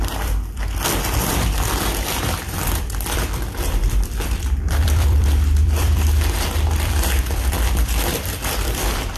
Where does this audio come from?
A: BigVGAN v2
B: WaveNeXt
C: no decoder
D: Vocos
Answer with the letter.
A